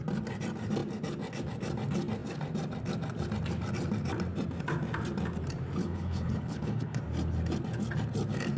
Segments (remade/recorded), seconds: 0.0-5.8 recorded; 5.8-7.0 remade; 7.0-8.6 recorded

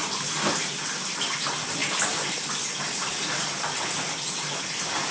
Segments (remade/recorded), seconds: 0.0-5.1 recorded

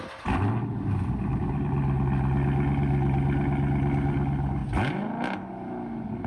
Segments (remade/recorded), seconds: 0.0-6.3 recorded

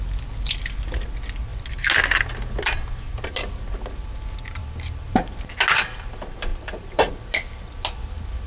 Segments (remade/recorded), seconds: 0.0-4.6 recorded; 4.6-5.4 remade; 5.4-6.5 recorded; 6.5-7.1 remade; 7.1-8.5 recorded

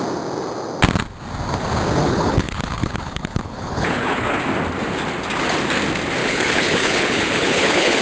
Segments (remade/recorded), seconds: 0.0-2.0 recorded; 2.0-4.4 remade; 4.4-6.2 recorded; 6.2-8.0 remade

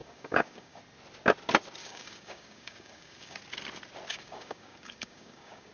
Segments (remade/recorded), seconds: 0.0-0.8 remade; 0.8-1.8 recorded; 1.8-3.4 remade; 3.4-4.1 recorded; 4.1-5.7 remade